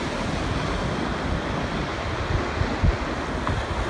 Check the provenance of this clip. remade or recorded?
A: recorded